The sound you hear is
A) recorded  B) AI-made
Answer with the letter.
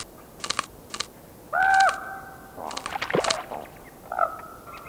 A